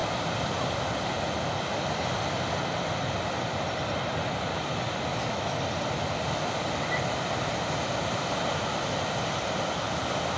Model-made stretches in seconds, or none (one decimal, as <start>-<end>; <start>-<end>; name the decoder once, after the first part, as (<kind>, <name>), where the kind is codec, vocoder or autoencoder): 5.1-5.6 (autoencoder, DAC-VAE)